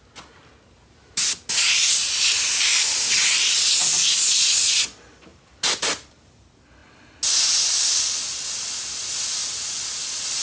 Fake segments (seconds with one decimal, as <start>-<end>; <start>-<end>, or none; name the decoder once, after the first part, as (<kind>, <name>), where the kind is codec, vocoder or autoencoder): none